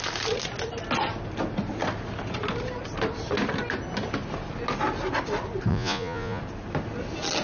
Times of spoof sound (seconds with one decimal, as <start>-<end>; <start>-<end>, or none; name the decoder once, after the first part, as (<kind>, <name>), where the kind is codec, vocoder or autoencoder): 5.7-6.4 (vocoder, Vocos)